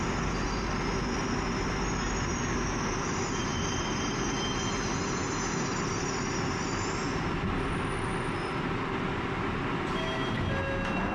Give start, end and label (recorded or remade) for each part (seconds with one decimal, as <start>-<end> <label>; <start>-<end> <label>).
0.0-11.1 recorded